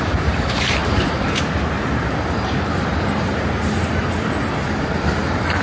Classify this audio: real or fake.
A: fake